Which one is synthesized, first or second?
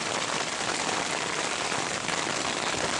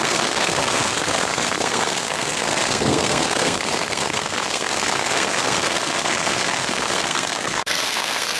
second